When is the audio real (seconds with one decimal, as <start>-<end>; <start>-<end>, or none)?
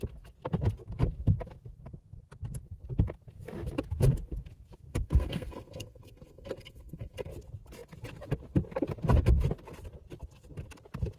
0.0-4.9; 7.3-11.2